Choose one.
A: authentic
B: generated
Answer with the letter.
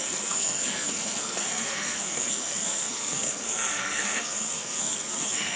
B